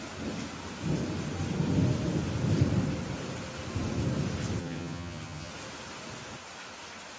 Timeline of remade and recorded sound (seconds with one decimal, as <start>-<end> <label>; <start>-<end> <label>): 0.0-4.6 recorded; 4.6-5.5 remade; 5.5-7.2 recorded